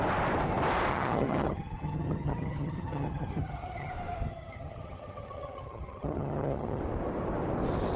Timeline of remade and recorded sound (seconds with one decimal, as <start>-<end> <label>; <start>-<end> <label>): 0.0-0.9 recorded; 0.9-3.9 remade; 3.9-4.3 recorded; 4.3-6.8 remade; 6.8-8.0 recorded